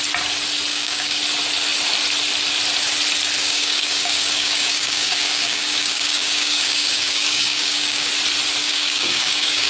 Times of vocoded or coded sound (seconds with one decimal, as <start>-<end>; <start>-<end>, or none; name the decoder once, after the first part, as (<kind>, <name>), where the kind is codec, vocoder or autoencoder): 0.7-1.2 (codec, DAC); 3.4-8.1; 8.6-9.7